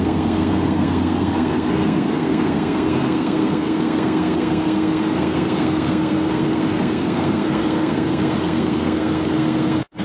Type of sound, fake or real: fake